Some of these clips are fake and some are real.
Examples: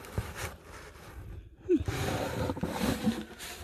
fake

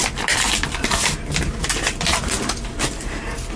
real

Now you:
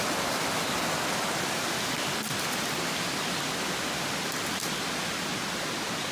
real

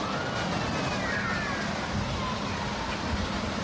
fake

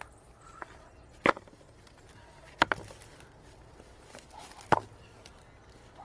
real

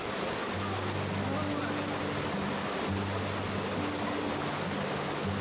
real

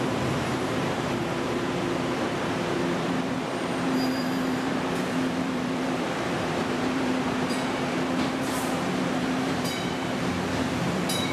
fake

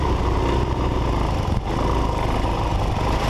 real